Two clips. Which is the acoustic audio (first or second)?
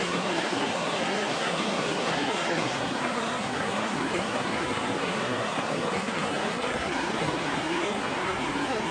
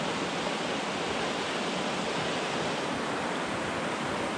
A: second